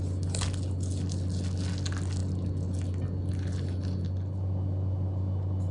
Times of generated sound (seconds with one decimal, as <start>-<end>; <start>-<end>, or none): none